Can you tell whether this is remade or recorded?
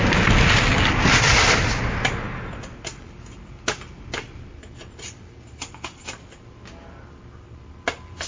recorded